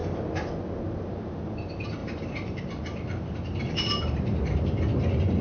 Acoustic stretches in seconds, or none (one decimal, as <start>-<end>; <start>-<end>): 0.0-2.0